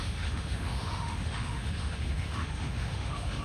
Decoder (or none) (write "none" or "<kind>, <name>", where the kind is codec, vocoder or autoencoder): autoencoder, DAC-VAE